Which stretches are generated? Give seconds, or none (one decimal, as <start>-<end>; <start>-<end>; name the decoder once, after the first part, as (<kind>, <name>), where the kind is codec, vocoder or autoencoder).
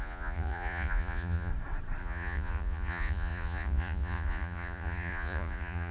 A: 0.0-1.5 (vocoder, Vocos); 2.0-5.9